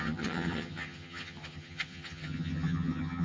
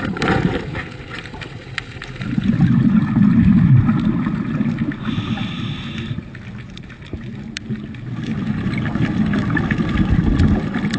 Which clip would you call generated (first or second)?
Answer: first